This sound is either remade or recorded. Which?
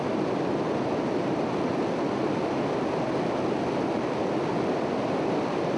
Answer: recorded